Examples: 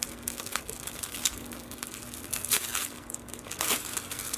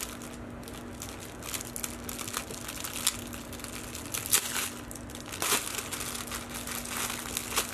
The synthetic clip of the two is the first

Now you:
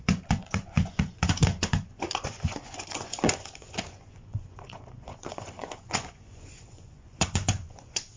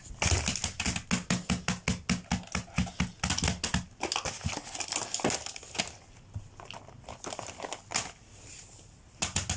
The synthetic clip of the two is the first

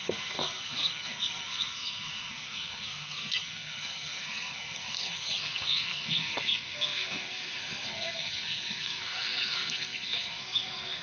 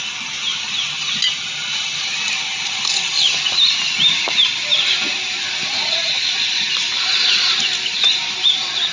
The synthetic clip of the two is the first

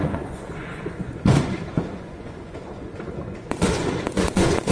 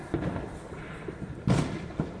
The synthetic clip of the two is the first